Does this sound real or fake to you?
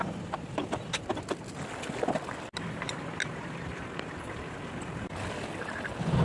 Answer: real